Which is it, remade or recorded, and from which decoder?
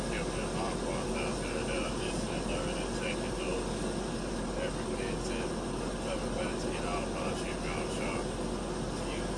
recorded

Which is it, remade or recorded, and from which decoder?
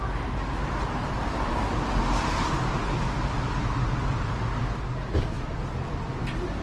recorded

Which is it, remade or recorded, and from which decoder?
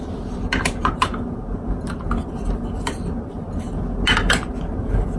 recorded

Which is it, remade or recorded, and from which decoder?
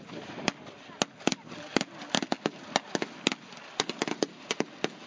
recorded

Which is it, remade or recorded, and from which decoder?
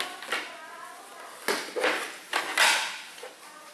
recorded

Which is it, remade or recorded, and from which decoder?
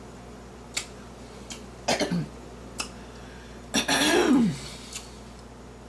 recorded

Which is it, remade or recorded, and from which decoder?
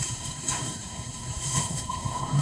remade, codec, SNAC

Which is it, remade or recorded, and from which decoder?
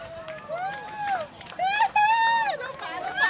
recorded